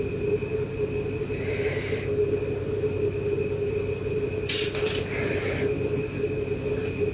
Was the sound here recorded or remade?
recorded